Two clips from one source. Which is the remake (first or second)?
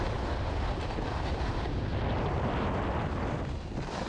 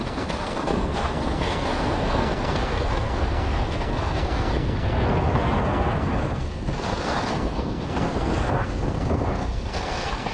second